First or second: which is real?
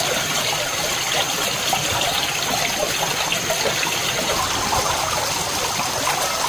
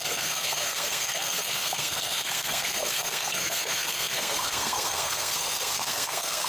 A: first